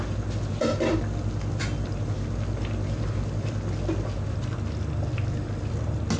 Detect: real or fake real